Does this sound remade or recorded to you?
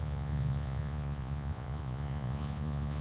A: remade